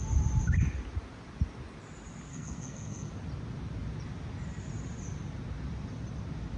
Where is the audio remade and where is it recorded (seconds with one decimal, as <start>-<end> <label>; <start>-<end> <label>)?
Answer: 0.0-2.3 recorded; 2.3-3.1 remade; 3.1-6.6 recorded